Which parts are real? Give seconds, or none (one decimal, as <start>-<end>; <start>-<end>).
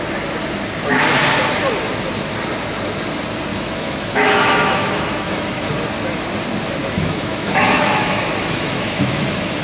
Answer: 0.0-3.5; 5.7-6.8; 9.2-9.6